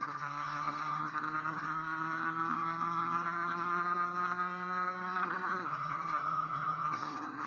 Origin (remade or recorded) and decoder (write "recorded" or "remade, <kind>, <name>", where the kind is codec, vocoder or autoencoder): remade, codec, SNAC